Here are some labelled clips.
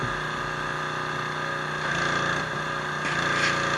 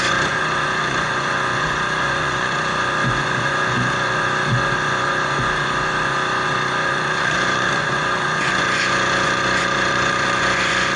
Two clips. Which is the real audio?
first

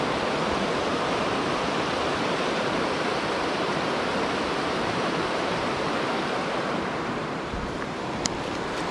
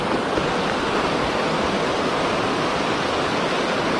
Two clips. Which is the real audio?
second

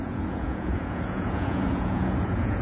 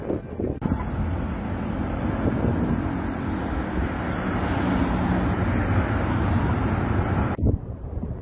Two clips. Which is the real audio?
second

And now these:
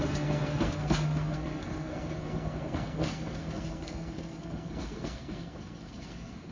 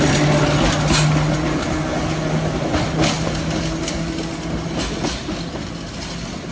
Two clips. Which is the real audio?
second